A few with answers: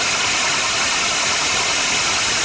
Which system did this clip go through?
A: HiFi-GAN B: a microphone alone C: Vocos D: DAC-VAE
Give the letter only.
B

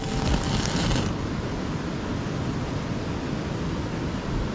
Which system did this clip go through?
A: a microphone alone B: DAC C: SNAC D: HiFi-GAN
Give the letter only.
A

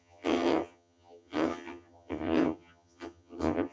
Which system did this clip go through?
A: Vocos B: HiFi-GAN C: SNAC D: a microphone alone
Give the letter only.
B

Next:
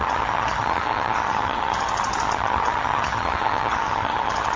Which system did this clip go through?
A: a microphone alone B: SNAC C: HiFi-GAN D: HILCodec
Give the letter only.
C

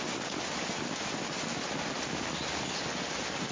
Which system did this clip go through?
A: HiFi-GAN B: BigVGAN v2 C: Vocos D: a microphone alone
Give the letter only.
D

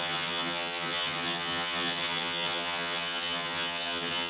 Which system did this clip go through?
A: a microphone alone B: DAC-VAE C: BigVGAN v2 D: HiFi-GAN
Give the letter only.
D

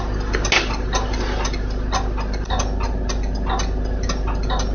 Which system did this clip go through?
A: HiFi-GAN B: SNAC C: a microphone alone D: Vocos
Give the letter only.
C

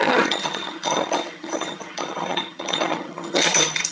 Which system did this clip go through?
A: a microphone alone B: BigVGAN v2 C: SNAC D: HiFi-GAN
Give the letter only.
D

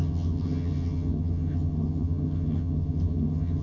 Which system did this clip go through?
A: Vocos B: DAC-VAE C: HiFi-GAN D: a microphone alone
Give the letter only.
C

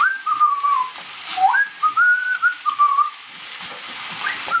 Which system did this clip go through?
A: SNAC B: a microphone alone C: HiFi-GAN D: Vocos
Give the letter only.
B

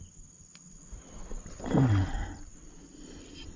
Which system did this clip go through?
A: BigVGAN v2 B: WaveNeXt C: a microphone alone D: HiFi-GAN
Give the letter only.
C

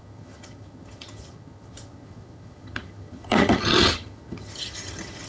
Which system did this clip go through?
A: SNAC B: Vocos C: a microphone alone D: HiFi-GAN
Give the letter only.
D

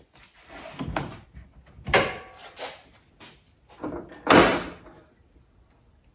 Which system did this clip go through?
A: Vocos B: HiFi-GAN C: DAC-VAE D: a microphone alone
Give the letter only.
D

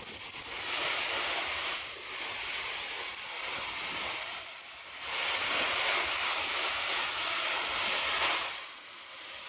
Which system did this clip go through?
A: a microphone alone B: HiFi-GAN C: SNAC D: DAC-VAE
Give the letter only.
A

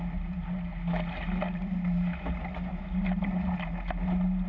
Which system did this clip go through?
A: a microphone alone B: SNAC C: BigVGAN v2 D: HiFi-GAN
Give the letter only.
A